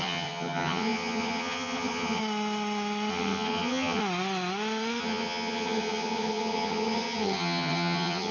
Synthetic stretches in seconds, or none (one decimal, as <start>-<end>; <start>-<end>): 0.0-2.2; 3.1-4.0; 5.0-8.3